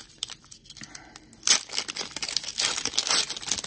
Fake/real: real